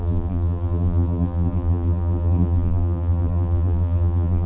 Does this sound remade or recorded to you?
remade